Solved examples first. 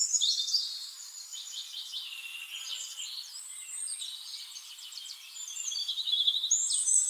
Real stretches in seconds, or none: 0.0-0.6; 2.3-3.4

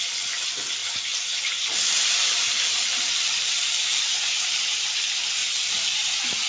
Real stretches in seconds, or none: 0.0-0.8; 4.6-5.4